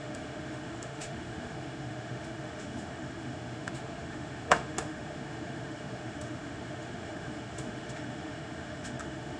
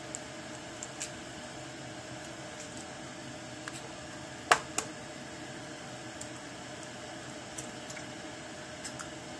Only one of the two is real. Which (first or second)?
second